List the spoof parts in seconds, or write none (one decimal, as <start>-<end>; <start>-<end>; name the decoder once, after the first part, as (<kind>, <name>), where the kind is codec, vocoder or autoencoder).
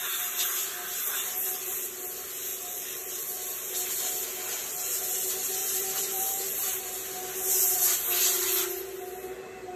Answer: 2.5-3.7 (vocoder, BigVGAN v2); 4.6-5.1; 5.6-6.8